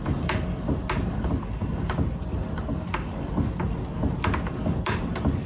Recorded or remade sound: recorded